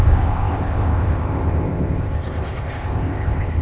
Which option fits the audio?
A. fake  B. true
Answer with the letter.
A